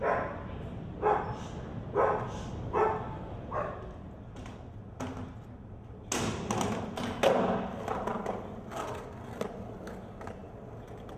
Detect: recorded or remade recorded